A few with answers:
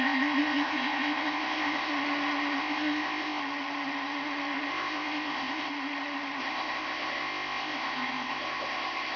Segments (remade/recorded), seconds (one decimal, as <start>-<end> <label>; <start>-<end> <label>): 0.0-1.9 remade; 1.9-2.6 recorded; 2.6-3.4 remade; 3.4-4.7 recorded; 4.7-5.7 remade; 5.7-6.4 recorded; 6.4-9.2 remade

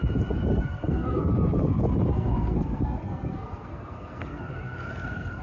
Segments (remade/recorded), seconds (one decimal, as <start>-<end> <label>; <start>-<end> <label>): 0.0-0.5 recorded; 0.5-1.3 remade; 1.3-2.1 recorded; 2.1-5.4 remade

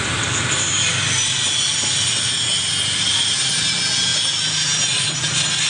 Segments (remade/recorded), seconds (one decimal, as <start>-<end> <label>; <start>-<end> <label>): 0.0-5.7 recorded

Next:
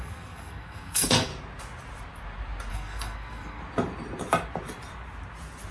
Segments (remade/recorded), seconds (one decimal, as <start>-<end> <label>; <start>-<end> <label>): 0.0-1.3 remade; 1.3-2.7 recorded; 2.7-3.6 remade; 3.6-5.7 recorded

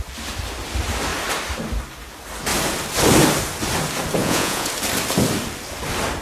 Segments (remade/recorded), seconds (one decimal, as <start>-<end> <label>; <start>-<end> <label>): 0.0-4.2 recorded; 4.2-4.7 remade; 4.7-6.2 recorded